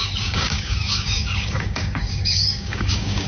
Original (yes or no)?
no